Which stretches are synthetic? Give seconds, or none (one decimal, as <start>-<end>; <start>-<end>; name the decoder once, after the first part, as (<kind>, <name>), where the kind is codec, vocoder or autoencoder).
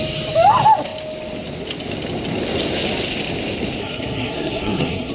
3.8-5.1 (codec, SNAC)